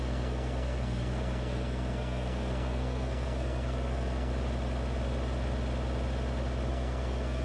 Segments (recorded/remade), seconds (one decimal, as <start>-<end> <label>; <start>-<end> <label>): 0.0-4.3 remade; 4.3-6.7 recorded; 6.7-7.4 remade